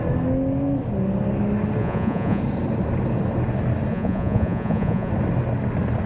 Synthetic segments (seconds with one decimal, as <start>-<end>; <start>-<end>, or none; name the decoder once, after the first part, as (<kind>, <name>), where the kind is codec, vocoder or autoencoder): 1.8-2.4 (vocoder, Vocos); 3.9-5.1